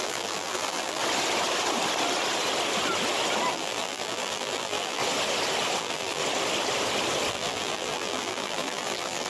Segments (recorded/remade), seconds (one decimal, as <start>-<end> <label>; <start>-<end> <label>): 0.0-1.0 remade; 1.0-3.5 recorded; 3.5-5.0 remade; 5.0-5.8 recorded; 5.8-6.2 remade; 6.2-7.3 recorded; 7.3-9.3 remade